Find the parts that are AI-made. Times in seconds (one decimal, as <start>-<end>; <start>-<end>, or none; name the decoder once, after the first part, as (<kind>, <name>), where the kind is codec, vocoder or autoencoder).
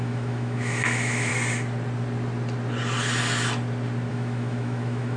0.0-1.3 (autoencoder, DAC-VAE); 4.1-5.2